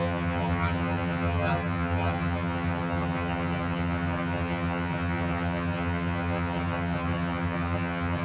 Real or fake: fake